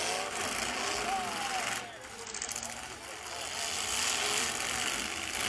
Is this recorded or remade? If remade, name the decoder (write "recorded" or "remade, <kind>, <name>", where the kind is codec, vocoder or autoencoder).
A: recorded